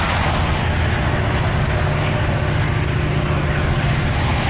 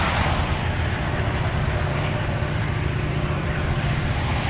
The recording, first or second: first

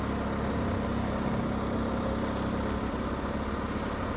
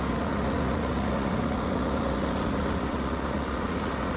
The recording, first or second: first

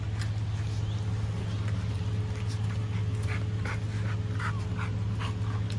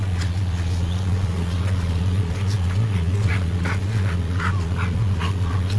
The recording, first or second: first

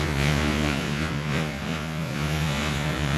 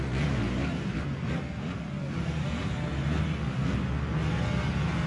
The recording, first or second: second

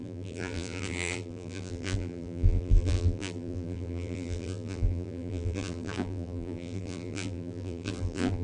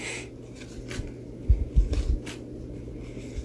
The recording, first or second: second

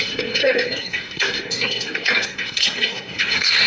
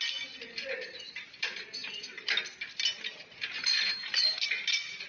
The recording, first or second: second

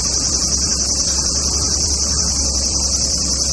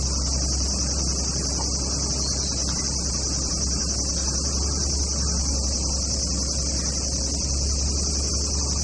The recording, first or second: second